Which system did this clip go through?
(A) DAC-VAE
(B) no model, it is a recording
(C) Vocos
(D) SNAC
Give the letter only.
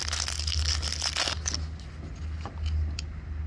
B